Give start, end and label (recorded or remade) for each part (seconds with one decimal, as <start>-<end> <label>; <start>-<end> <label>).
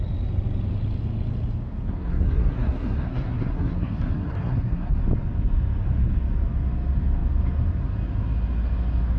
0.0-2.0 recorded; 2.0-5.0 remade; 5.0-9.2 recorded